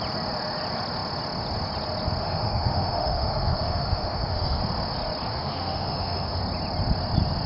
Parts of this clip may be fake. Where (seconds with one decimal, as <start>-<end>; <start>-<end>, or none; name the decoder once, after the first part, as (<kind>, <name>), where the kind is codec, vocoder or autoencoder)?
2.2-4.6 (autoencoder, DAC-VAE); 5.3-6.4